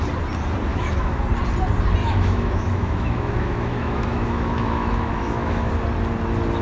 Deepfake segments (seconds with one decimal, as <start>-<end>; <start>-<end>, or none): 0.7-1.2; 2.0-5.7

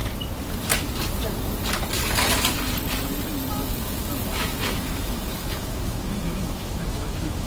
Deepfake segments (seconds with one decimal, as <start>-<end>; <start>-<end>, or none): 3.5-7.5

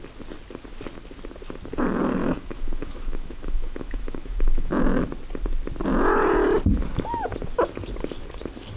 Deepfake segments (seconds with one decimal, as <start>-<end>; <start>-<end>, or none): 2.2-4.8

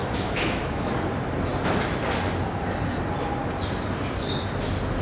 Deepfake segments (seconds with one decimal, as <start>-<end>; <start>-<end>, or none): 0.0-0.9

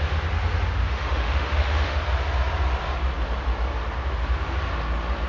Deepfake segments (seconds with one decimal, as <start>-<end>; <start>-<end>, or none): 0.8-2.0

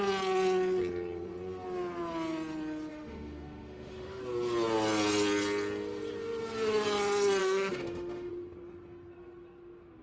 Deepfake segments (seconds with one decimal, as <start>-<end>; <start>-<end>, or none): 2.9-4.2; 7.4-8.3

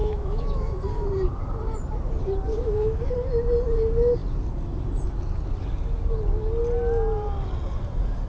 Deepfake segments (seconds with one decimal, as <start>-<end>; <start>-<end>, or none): 0.0-0.8; 2.5-3.1

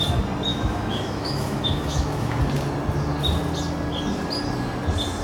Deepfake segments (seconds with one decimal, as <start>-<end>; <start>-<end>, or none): 0.5-2.4